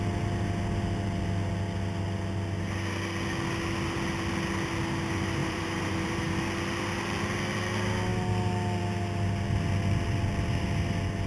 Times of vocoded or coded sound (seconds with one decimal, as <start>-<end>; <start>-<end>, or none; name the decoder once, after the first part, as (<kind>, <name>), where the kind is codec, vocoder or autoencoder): 5.4-6.2 (vocoder, BigVGAN v2)